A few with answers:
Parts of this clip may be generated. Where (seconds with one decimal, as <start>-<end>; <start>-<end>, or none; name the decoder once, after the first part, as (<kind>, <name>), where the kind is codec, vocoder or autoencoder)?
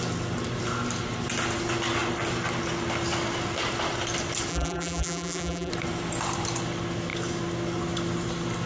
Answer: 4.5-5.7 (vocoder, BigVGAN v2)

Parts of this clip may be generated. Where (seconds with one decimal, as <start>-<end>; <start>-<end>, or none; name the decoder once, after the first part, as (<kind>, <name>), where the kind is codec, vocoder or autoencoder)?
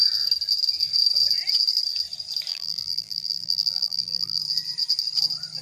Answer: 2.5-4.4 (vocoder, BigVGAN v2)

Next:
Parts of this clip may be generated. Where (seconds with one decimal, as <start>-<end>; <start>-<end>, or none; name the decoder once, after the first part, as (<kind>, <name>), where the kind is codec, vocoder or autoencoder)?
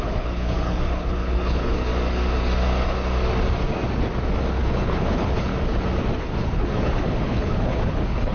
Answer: 0.0-1.9 (codec, HILCodec); 4.6-5.5; 6.2-8.3